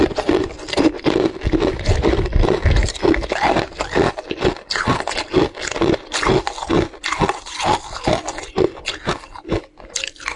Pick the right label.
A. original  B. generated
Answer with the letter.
A